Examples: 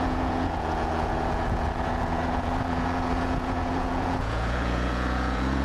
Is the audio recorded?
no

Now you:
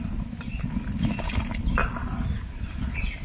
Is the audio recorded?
yes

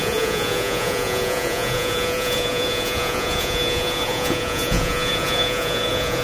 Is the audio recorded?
no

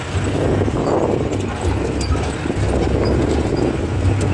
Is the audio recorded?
yes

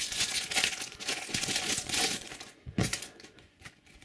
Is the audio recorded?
no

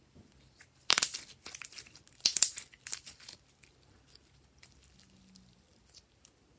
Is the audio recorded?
yes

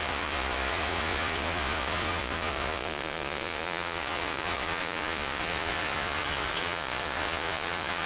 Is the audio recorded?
no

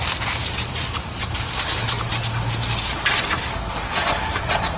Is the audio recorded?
yes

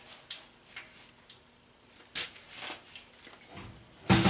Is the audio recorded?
yes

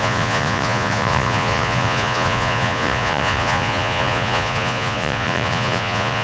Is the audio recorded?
no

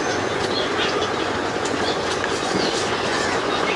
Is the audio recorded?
no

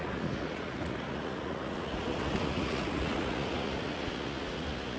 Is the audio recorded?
no